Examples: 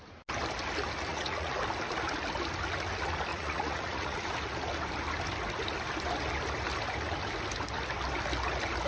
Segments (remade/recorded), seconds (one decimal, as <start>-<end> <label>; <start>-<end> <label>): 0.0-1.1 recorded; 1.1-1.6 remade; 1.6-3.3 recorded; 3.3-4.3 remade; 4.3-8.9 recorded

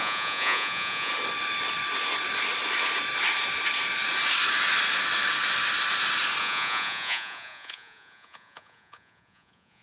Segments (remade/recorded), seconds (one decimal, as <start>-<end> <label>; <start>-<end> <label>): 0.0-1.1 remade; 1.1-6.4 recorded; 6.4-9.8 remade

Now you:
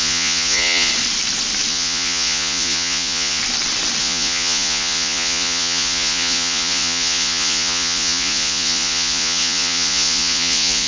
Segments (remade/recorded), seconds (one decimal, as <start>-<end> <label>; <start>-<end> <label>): 0.0-0.9 remade; 0.9-1.7 recorded; 1.7-3.4 remade; 3.4-4.0 recorded; 4.0-10.9 remade

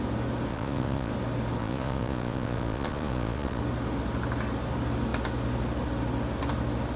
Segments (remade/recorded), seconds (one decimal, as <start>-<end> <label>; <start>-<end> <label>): 0.0-0.5 recorded; 0.5-1.1 remade; 1.1-1.6 recorded; 1.6-3.6 remade; 3.6-7.0 recorded

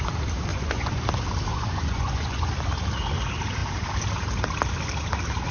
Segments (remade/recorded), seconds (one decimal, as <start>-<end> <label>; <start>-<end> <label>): 0.0-0.5 recorded; 0.5-1.0 remade; 1.0-1.5 recorded; 1.5-2.5 remade; 2.5-5.5 recorded

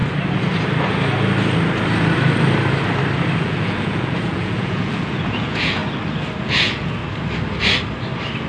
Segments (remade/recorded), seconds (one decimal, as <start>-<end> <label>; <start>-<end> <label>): 0.0-3.4 recorded; 3.4-5.8 remade; 5.8-6.4 recorded; 6.4-7.0 remade; 7.0-8.5 recorded

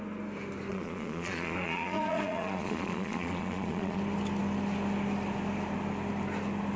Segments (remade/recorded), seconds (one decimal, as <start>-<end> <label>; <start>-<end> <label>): 0.0-0.7 recorded; 0.7-4.0 remade; 4.0-6.8 recorded